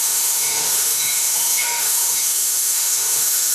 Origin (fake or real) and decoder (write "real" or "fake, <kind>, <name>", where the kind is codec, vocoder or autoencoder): fake, autoencoder, DAC-VAE